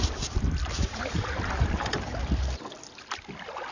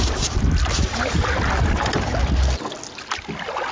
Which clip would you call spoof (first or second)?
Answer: first